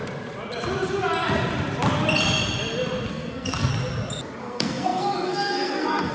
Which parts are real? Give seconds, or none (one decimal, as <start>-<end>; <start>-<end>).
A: 0.0-3.1; 3.7-4.4